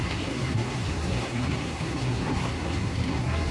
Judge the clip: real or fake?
fake